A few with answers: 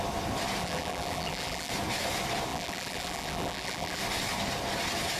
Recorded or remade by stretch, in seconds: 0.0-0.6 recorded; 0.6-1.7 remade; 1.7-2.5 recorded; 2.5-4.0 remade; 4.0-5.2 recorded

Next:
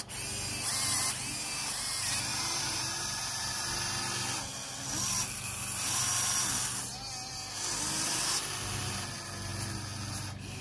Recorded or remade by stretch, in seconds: 0.0-2.3 recorded; 2.3-3.5 remade; 3.5-10.6 recorded

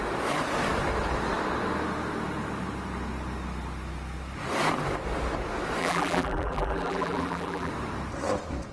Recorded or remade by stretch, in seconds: 0.0-5.8 recorded; 5.8-7.7 remade; 7.7-8.7 recorded

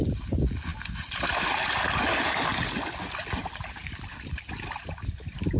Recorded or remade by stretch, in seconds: 0.0-3.8 recorded; 3.8-4.4 remade; 4.4-5.6 recorded